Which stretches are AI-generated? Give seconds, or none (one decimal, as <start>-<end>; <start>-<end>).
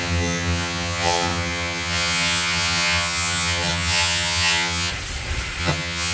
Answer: 0.0-4.9; 5.6-6.1